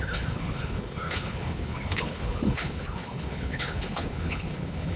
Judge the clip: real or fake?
fake